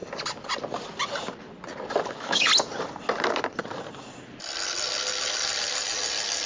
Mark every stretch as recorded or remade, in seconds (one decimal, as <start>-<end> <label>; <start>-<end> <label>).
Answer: 0.0-2.1 recorded; 2.1-2.5 remade; 2.5-6.5 recorded